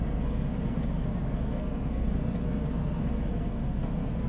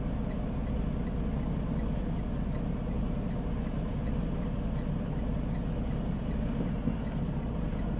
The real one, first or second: second